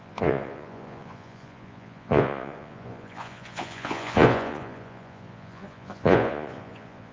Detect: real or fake fake